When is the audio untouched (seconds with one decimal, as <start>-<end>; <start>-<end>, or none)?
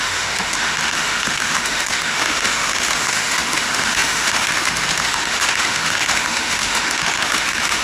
none